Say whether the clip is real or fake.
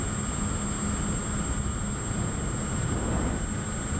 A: real